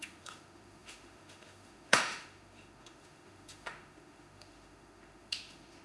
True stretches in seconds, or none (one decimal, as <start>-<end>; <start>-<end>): none

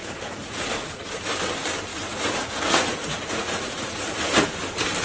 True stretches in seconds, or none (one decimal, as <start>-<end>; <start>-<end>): 1.2-1.9; 4.6-5.0

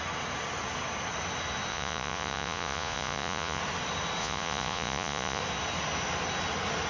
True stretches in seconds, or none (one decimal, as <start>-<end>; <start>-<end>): 0.0-1.7; 3.6-4.2; 5.4-6.9

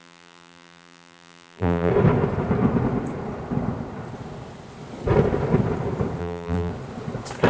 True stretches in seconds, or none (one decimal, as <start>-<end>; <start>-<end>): 1.9-6.2; 6.7-7.5

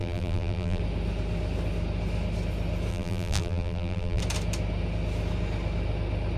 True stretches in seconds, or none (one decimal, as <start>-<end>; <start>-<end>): 0.8-2.9; 4.2-6.4

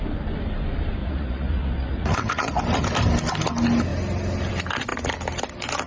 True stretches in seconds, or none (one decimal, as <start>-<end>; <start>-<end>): 0.0-1.0; 2.6-5.9

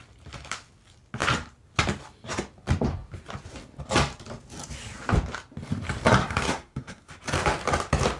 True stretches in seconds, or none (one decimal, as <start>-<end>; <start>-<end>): 0.0-6.2; 7.1-8.2

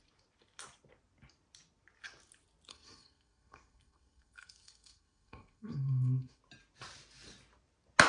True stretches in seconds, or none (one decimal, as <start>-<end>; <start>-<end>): 0.0-2.7; 6.4-8.1